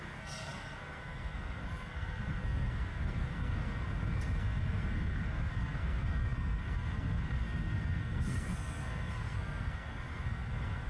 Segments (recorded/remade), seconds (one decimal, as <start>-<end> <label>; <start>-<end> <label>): 0.0-10.9 remade